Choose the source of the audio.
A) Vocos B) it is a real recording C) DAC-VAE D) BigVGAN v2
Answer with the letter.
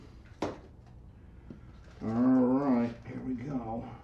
B